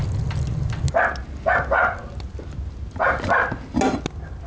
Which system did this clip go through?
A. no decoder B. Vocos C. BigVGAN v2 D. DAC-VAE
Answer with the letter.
A